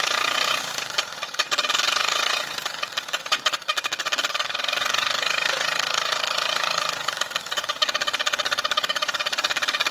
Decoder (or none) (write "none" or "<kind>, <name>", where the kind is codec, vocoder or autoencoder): codec, DAC